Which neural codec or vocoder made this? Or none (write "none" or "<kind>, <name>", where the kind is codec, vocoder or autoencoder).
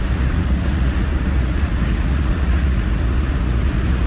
vocoder, Vocos